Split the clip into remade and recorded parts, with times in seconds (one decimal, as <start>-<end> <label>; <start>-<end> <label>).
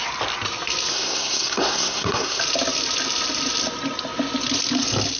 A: 0.0-0.9 recorded; 0.9-2.4 remade; 2.4-5.2 recorded